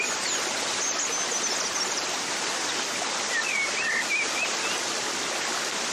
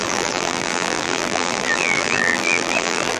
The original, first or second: first